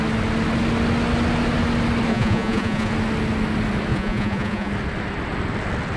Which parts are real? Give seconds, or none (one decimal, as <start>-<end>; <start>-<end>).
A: 0.0-2.1; 2.9-3.9; 4.7-6.0